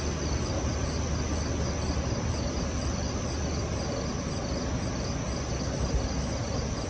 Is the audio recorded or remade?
recorded